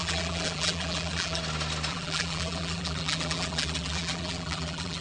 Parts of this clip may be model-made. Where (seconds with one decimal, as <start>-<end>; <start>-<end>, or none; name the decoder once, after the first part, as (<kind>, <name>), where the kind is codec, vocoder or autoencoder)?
0.0-1.4 (vocoder, BigVGAN v2); 1.9-5.0